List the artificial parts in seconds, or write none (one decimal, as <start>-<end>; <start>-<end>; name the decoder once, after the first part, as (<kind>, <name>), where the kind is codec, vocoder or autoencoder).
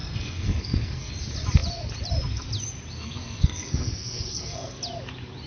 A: 0.0-1.1 (codec, SNAC); 3.0-4.8